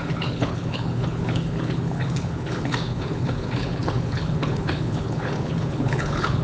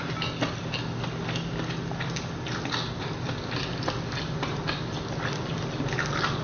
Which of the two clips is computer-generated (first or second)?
first